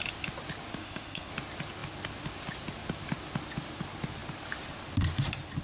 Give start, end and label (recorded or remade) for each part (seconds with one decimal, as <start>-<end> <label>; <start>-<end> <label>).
0.0-0.7 recorded; 0.7-1.3 remade; 1.3-5.6 recorded